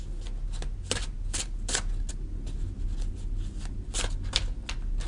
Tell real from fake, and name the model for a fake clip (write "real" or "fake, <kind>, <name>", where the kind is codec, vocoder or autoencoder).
real